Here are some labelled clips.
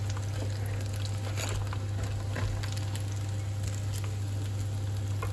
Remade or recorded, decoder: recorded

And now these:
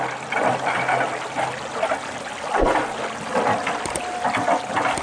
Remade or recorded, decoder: recorded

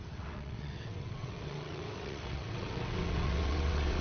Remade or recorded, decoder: remade, vocoder, WaveNeXt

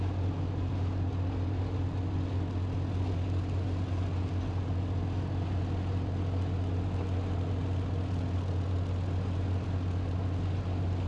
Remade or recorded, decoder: recorded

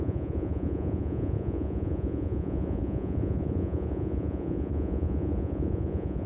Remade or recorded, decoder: remade, vocoder, Vocos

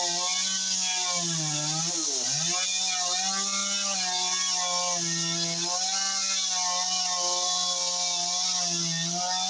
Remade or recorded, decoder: recorded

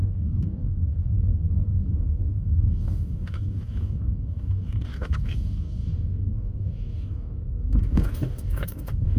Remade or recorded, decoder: remade, codec, DAC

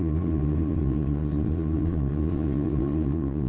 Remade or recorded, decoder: remade, vocoder, Vocos